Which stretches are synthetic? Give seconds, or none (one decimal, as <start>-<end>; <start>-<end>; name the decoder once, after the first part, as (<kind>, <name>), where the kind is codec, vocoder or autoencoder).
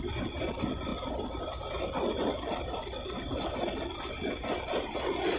none